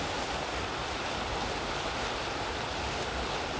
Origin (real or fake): real